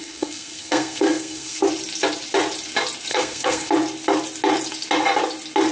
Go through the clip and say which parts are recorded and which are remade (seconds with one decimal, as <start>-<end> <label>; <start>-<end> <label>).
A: 0.0-1.6 remade; 1.6-3.1 recorded; 3.1-3.7 remade; 3.7-5.7 recorded